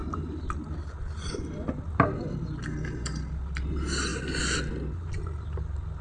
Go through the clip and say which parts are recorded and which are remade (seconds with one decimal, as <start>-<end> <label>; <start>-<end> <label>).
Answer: 0.0-1.5 remade; 1.5-4.1 recorded; 4.1-5.6 remade; 5.6-6.0 recorded